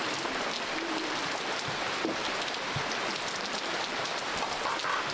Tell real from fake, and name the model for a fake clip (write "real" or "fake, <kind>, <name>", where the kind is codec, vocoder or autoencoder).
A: fake, vocoder, BigVGAN v2